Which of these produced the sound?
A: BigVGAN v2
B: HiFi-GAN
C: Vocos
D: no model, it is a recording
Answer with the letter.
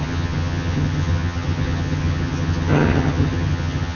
B